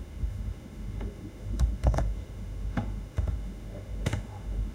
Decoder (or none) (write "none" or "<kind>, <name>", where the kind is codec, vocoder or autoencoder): autoencoder, DAC-VAE